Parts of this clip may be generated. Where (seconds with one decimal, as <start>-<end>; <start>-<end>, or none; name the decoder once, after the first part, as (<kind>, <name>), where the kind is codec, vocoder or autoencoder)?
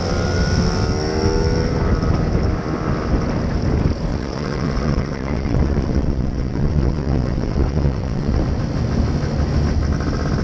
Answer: 4.1-8.4 (vocoder, WaveNeXt)